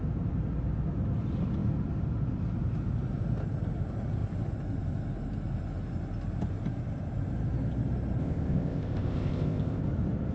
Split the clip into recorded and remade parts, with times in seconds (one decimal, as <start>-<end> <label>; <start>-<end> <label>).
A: 0.0-8.2 recorded; 8.2-9.8 remade; 9.8-10.3 recorded